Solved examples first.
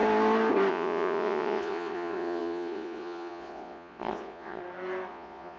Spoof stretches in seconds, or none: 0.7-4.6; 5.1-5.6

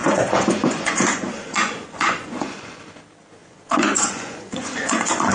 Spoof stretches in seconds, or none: 0.0-2.8; 3.4-5.3